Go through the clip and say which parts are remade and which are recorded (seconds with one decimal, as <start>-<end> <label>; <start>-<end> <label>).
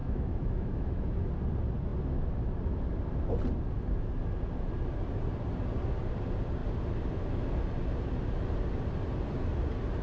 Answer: 0.0-1.3 remade; 1.3-10.0 recorded